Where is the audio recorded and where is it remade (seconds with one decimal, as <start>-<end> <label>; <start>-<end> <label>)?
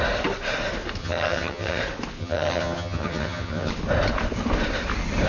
0.0-1.0 recorded; 1.0-1.8 remade; 1.8-2.2 recorded; 2.2-3.7 remade; 3.7-5.3 recorded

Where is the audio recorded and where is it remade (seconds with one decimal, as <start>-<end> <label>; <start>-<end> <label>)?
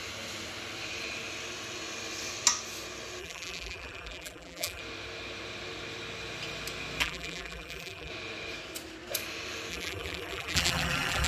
0.0-3.2 recorded; 3.2-4.8 remade; 4.8-7.0 recorded; 7.0-8.1 remade; 8.1-9.7 recorded; 9.7-11.3 remade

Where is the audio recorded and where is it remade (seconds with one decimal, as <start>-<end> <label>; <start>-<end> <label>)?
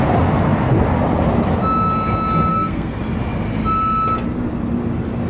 0.0-2.5 recorded; 2.5-3.0 remade; 3.0-5.3 recorded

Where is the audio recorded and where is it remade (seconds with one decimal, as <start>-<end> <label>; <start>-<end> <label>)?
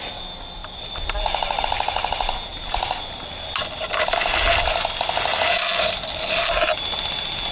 0.0-2.5 recorded; 2.5-3.6 remade; 3.6-5.7 recorded; 5.7-6.3 remade; 6.3-7.5 recorded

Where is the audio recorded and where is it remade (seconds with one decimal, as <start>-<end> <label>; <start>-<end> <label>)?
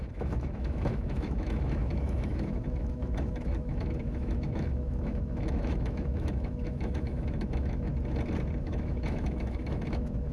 0.0-7.9 remade; 7.9-8.6 recorded; 8.6-10.3 remade